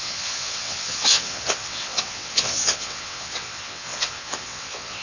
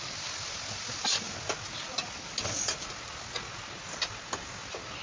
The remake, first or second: first